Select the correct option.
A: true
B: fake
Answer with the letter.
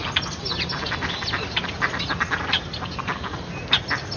A